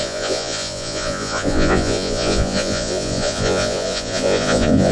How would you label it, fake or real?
fake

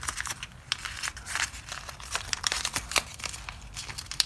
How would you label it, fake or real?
fake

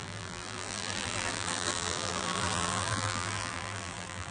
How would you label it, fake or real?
fake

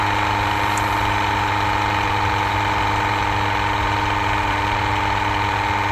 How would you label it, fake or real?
real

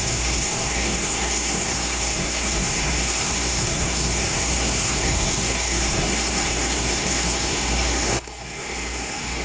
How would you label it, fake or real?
fake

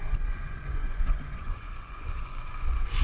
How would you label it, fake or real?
fake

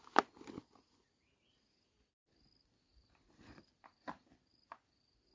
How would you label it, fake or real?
real